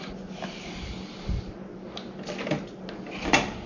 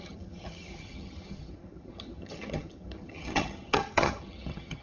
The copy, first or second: second